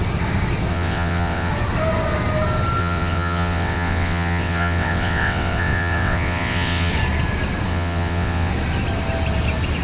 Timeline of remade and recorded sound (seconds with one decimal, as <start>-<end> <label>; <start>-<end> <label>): 0.0-0.7 recorded; 0.7-1.5 remade; 1.5-2.8 recorded; 2.8-6.9 remade; 6.9-7.7 recorded; 7.7-8.5 remade; 8.5-9.8 recorded